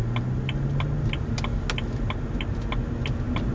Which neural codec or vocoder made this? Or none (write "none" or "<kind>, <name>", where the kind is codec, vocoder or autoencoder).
none